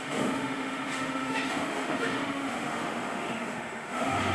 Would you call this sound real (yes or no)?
no